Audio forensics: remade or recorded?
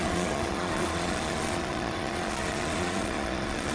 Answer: remade